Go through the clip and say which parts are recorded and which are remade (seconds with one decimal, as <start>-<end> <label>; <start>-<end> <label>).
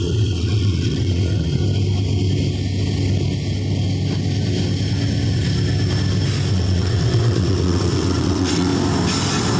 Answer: 0.0-1.6 remade; 1.6-6.5 recorded; 6.5-8.7 remade; 8.7-9.6 recorded